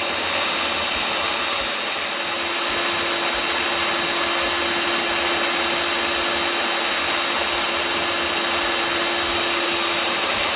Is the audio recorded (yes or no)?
yes